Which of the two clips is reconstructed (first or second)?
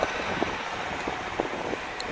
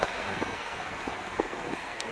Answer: second